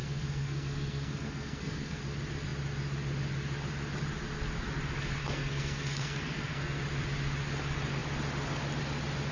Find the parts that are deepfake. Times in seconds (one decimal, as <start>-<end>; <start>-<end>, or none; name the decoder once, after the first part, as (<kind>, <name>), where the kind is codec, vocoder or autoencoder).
0.0-2.0 (codec, SNAC); 5.2-6.8